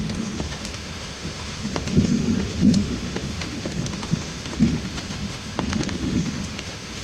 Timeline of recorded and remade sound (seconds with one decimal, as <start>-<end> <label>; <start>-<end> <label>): 0.0-7.0 remade